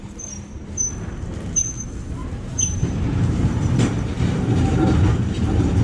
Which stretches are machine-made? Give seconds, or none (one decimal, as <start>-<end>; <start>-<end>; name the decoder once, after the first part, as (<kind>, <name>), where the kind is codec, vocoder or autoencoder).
2.2-5.8 (vocoder, BigVGAN v2)